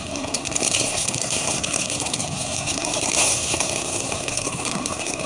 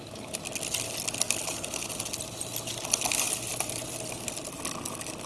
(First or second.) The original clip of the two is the second